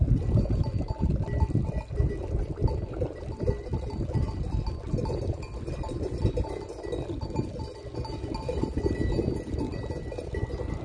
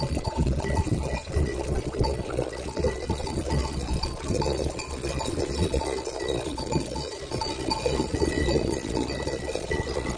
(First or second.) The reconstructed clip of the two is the second